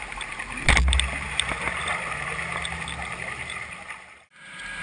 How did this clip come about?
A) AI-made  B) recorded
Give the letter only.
B